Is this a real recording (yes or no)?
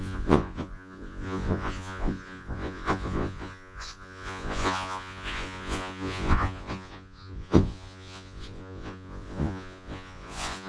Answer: no